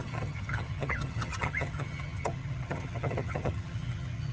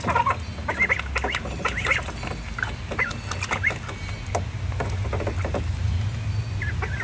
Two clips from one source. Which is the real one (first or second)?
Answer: second